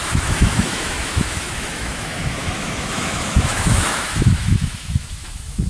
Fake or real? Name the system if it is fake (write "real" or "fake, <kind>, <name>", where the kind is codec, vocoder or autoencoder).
fake, autoencoder, DAC-VAE